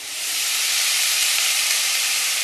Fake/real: fake